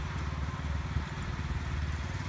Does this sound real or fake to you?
real